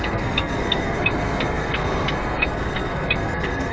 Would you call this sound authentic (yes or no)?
no